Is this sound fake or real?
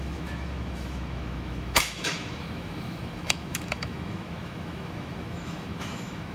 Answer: fake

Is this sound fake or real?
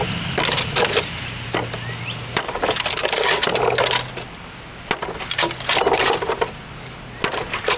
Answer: real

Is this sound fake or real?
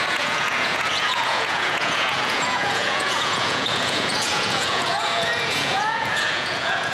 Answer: fake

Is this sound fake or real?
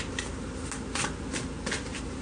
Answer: real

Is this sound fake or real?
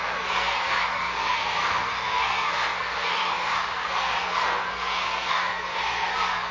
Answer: fake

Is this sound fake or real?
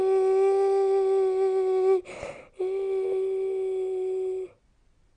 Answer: real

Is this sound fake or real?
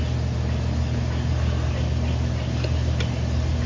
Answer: real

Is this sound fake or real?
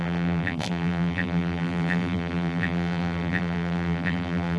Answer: fake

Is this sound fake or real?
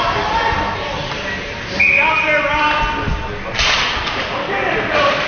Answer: real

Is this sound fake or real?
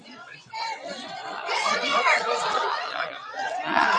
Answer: fake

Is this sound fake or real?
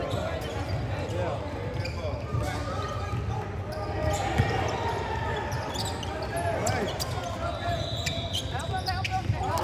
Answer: real